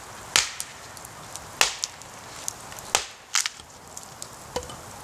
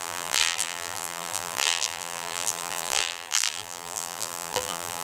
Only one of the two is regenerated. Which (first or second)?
second